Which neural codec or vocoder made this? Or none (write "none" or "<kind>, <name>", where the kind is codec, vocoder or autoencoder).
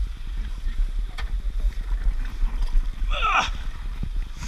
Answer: none